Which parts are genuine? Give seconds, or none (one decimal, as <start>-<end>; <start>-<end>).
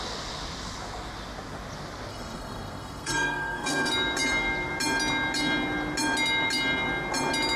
0.0-2.1; 3.9-7.6